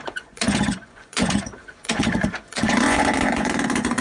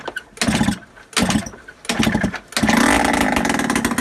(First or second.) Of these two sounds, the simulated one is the first